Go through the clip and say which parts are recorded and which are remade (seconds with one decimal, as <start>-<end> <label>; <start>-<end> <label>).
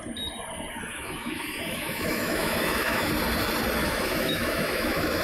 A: 0.0-0.9 recorded; 0.9-3.1 remade; 3.1-3.8 recorded; 3.8-5.2 remade